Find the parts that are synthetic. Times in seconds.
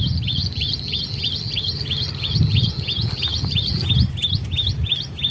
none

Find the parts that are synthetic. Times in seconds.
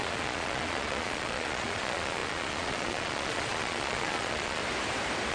0.0-4.6 (vocoder, Vocos)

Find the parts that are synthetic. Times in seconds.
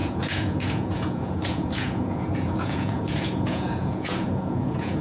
0.0-5.0 (vocoder, Vocos)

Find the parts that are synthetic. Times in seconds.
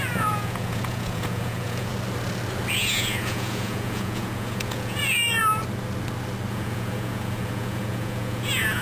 0.0-1.9 (vocoder, Vocos); 2.8-5.4; 6.5-8.8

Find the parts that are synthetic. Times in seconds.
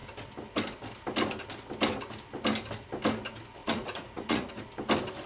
3.6-4.5 (vocoder, Vocos)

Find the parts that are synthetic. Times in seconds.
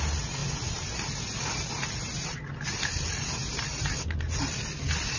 none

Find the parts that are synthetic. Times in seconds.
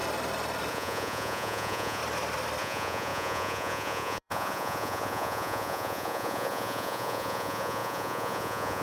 0.7-2.0 (vocoder, Vocos); 2.6-8.8